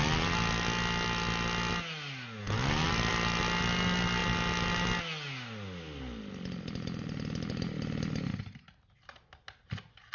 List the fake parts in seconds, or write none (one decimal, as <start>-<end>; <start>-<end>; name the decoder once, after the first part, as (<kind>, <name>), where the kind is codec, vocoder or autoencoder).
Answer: none